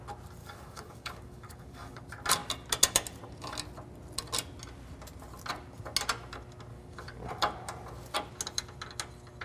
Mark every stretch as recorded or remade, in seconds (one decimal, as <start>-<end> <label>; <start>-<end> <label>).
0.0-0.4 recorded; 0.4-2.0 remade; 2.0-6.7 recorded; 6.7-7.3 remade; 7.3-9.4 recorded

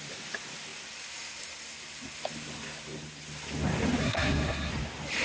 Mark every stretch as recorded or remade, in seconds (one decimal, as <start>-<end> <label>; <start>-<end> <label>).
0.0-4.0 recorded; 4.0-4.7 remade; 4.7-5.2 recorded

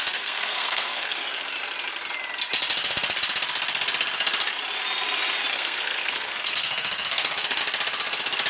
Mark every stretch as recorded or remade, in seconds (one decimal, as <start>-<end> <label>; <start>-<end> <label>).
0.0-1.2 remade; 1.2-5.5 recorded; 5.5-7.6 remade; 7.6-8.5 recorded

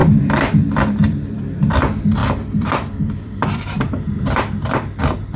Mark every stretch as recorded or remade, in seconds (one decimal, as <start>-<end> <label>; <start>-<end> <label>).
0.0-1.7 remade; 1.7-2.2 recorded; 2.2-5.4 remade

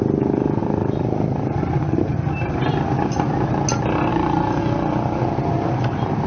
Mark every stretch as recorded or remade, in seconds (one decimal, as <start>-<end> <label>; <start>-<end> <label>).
0.0-0.6 recorded; 0.6-2.0 remade; 2.0-4.1 recorded; 4.1-4.6 remade; 4.6-6.3 recorded

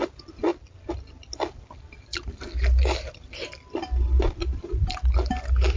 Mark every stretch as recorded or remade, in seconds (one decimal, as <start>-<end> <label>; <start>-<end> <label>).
0.0-5.8 recorded